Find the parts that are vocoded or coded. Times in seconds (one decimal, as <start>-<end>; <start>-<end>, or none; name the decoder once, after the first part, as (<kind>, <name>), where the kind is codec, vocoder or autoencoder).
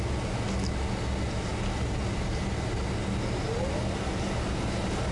none